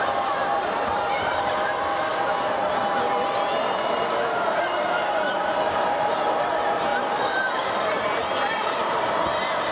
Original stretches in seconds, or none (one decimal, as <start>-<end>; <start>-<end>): none